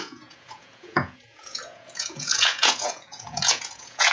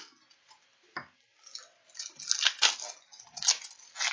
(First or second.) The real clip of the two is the second